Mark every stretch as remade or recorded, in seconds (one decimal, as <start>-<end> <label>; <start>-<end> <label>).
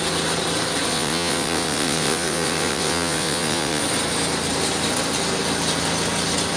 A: 0.0-0.9 recorded; 0.9-3.8 remade; 3.8-6.6 recorded